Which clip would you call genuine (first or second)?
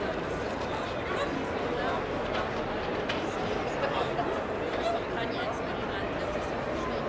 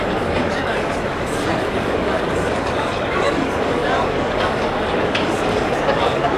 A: first